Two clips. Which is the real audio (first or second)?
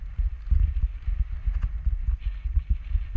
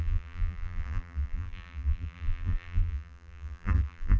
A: first